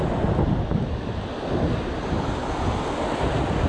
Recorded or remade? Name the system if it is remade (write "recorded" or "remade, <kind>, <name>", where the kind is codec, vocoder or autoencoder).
recorded